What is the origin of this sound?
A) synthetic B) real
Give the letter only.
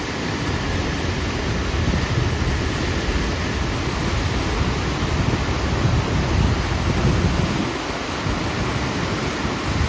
B